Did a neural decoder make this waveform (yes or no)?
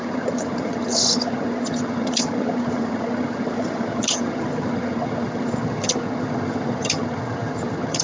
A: yes